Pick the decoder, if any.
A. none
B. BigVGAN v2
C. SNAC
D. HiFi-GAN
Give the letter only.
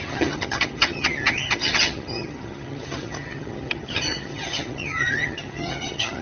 D